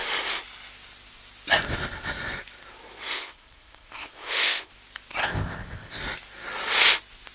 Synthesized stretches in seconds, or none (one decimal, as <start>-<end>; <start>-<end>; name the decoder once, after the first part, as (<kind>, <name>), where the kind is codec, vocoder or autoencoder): 3.1-4.7 (codec, ZipCodec); 5.2-6.0